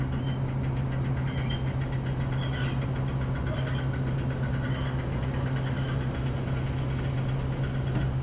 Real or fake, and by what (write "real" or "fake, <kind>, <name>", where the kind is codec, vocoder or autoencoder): real